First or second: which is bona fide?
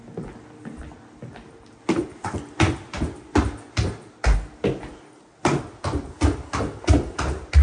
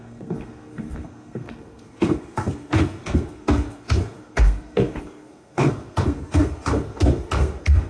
first